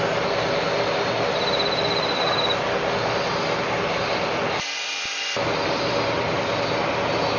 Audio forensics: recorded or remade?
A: recorded